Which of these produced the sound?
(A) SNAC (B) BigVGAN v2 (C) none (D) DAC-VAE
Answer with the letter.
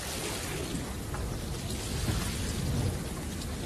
C